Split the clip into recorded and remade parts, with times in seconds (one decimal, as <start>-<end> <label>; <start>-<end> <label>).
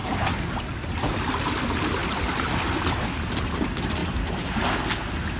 0.0-1.6 remade; 1.6-2.0 recorded; 2.0-3.1 remade; 3.1-4.0 recorded; 4.0-4.6 remade; 4.6-5.4 recorded